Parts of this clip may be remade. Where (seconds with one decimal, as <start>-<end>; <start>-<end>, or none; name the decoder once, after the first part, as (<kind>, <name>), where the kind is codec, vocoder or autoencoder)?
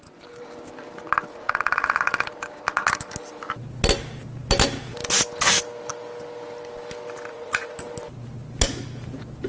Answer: 1.3-2.0 (vocoder, Vocos); 7.3-7.8